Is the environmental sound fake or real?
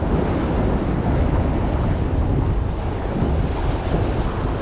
real